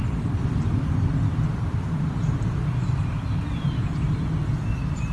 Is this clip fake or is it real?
real